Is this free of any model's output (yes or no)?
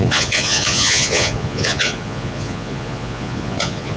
no